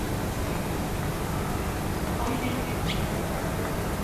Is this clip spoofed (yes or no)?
no